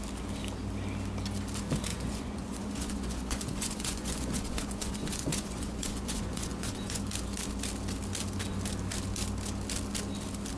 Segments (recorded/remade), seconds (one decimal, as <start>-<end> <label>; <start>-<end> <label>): 0.0-1.9 recorded; 1.9-7.0 remade; 7.0-10.6 recorded